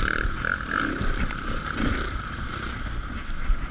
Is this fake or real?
real